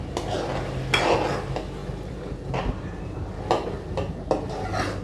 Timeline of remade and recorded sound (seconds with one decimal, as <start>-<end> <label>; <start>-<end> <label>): 0.0-5.0 recorded